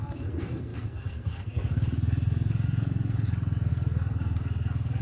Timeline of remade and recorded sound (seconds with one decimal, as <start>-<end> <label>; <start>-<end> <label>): 0.0-5.0 remade